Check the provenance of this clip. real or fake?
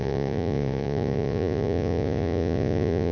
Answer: fake